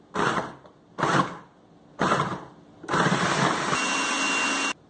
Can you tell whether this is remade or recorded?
recorded